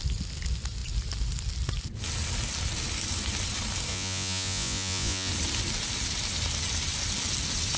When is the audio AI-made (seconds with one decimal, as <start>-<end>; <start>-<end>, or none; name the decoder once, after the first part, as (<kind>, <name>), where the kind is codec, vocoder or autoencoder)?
3.9-5.3 (vocoder, Vocos)